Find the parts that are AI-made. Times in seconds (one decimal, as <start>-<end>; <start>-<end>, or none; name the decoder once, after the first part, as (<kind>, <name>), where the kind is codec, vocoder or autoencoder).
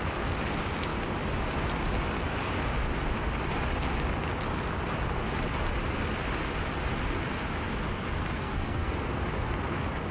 8.2-8.9 (codec, SNAC)